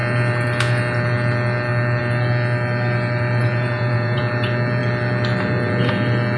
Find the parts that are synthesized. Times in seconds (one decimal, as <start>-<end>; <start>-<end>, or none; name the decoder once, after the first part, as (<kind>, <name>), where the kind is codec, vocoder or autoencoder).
3.4-4.2 (vocoder, Vocos)